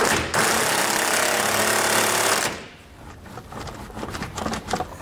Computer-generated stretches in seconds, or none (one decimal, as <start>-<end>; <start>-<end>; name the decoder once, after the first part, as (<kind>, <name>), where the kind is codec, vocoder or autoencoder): none